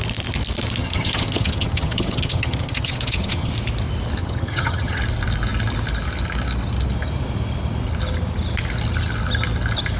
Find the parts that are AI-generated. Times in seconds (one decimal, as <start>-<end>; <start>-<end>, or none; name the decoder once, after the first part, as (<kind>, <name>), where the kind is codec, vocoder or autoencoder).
0.8-3.5 (vocoder, HiFi-GAN); 4.2-5.0